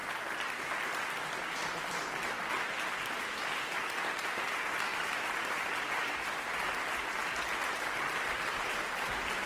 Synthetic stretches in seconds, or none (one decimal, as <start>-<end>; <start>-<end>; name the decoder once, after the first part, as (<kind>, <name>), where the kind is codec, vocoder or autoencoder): none